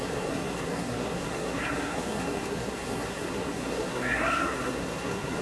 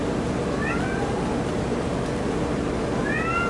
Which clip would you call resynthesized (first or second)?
first